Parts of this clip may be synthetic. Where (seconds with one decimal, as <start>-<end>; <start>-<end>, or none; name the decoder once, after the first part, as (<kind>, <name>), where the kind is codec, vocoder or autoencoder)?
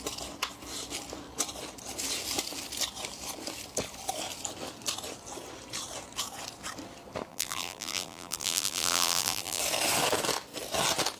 7.3-9.6 (vocoder, BigVGAN v2)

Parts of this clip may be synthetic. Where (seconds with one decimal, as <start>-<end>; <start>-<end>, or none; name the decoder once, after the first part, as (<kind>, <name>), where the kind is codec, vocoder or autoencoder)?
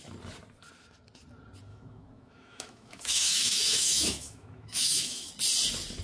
1.7-5.3 (autoencoder, DAC-VAE)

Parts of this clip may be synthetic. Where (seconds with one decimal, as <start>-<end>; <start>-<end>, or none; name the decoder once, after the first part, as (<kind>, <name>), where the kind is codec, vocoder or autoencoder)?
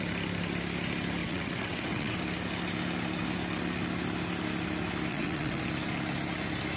1.2-2.2 (vocoder, WaveNeXt); 5.1-5.6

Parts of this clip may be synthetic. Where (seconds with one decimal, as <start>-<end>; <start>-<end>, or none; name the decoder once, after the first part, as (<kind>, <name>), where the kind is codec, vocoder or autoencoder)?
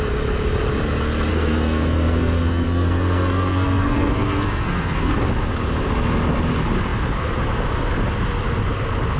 1.3-5.1 (codec, SNAC)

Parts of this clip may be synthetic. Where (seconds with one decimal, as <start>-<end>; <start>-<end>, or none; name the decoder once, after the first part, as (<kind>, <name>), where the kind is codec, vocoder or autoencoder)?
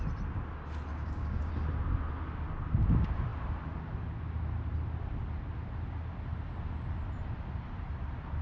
0.9-1.5 (codec, DAC)